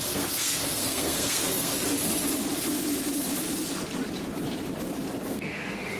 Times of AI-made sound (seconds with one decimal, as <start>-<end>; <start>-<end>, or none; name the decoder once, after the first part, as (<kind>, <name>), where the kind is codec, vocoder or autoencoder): 0.0-1.7 (codec, SNAC); 5.3-6.0